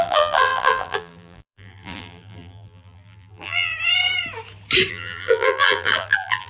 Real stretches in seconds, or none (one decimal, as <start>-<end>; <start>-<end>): 3.7-4.9